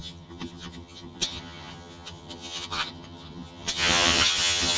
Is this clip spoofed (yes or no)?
yes